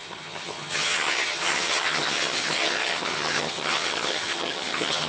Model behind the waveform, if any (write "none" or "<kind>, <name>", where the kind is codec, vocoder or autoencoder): vocoder, HiFi-GAN